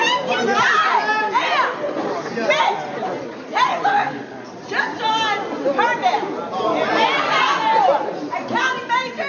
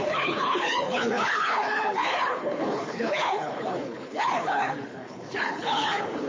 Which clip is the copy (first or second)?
second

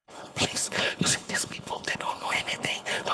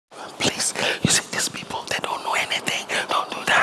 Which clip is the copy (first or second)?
first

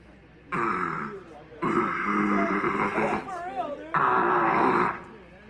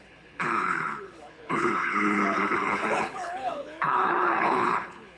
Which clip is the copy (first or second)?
second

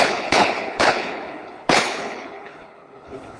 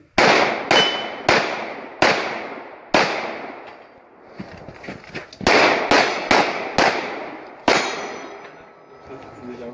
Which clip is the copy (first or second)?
first